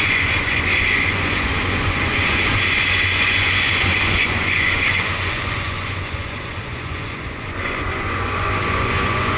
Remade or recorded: remade